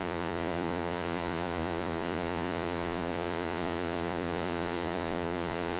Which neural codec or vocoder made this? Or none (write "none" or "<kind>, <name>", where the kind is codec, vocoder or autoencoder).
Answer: vocoder, Vocos